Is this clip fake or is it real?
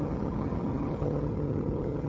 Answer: fake